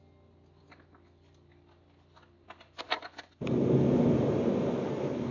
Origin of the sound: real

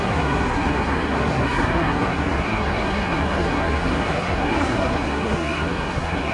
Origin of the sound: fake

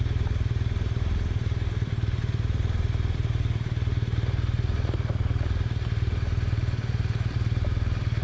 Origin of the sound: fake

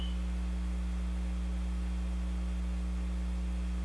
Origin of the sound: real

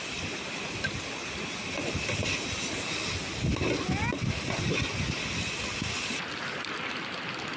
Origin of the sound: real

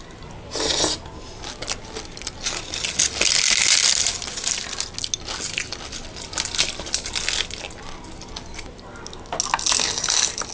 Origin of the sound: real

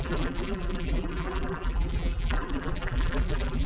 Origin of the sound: fake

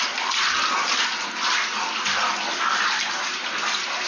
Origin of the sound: real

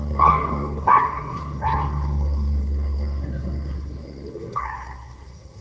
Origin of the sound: fake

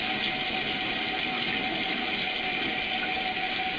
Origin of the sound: real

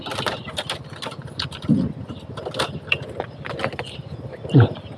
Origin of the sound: real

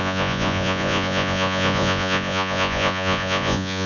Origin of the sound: fake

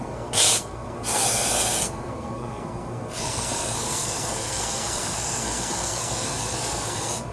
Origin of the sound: fake